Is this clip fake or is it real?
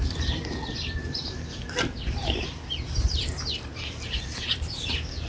fake